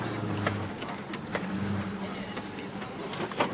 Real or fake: real